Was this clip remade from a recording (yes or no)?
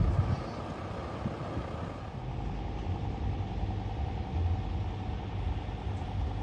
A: no